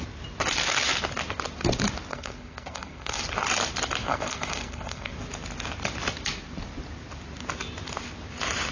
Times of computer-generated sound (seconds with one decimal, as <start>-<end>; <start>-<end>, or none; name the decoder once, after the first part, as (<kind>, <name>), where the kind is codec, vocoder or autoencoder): 2.1-3.2 (codec, SNAC); 4.0-5.1